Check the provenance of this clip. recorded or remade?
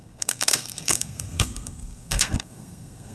remade